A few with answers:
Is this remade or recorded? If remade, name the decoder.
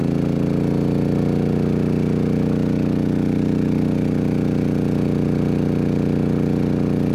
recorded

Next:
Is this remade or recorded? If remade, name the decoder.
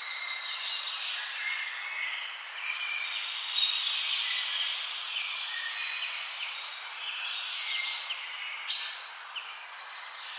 recorded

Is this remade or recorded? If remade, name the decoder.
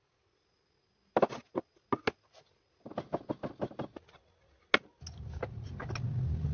recorded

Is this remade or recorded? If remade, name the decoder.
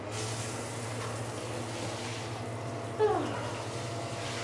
recorded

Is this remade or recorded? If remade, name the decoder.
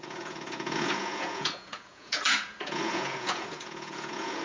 remade, vocoder, Vocos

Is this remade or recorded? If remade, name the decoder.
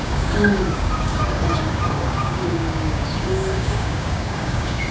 remade, codec, DAC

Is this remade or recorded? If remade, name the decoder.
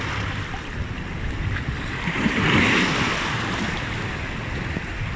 remade, vocoder, BigVGAN v2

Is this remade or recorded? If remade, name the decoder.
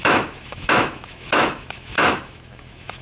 remade, autoencoder, DAC-VAE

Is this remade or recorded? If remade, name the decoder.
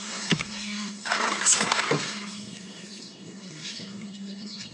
remade, codec, SNAC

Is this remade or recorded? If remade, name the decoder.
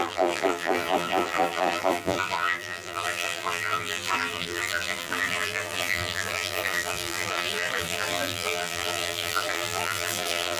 remade, vocoder, BigVGAN v2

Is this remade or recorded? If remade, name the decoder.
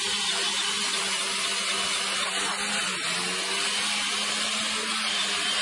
recorded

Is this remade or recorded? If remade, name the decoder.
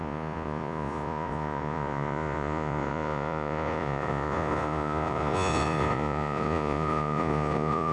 remade, vocoder, Vocos